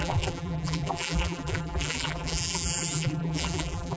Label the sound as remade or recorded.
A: remade